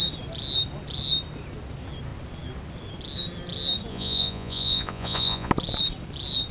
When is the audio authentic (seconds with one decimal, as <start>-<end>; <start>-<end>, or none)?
0.0-3.9; 5.5-6.5

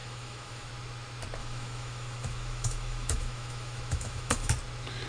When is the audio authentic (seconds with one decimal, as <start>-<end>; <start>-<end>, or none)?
0.7-1.4; 4.5-5.1

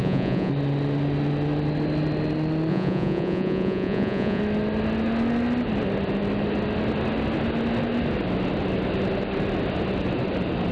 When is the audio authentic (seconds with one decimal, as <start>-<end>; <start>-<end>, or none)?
0.5-2.7; 4.4-10.7

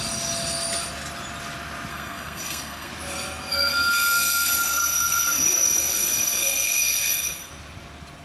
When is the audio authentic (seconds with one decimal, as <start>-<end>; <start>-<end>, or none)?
0.0-1.9; 2.9-3.5; 7.5-8.2

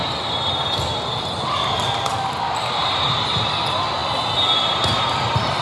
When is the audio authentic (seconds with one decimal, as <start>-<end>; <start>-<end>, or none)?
0.0-5.6

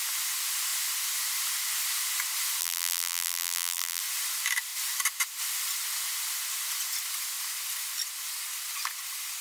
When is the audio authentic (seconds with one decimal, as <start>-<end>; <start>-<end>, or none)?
0.0-2.6; 4.0-9.4

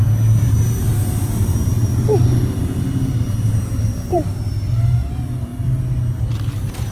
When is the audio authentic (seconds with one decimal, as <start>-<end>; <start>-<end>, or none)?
5.5-6.5